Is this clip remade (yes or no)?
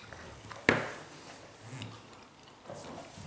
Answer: no